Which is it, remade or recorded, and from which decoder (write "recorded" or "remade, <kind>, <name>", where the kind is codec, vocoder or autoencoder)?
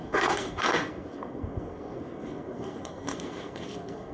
remade, codec, SNAC